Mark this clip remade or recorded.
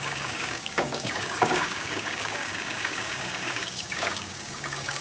remade